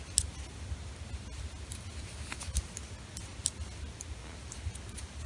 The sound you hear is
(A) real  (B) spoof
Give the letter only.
A